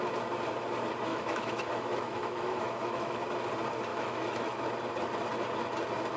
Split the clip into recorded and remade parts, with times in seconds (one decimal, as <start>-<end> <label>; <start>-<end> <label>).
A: 0.0-1.1 recorded; 1.1-3.2 remade; 3.2-3.9 recorded; 3.9-4.7 remade; 4.7-6.2 recorded